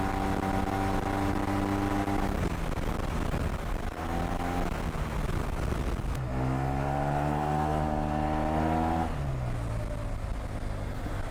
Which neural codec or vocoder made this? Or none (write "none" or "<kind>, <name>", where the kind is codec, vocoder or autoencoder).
none